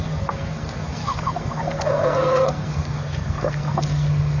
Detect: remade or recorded remade